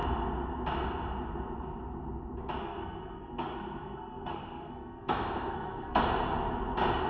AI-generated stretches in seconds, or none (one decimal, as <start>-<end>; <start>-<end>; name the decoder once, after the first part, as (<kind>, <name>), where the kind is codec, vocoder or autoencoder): 2.6-6.0 (codec, SNAC)

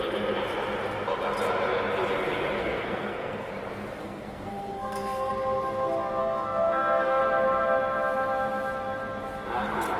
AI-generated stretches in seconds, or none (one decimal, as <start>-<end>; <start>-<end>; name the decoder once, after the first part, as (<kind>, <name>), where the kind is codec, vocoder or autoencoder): 2.6-3.5 (codec, SNAC); 4.0-5.3; 6.2-7.2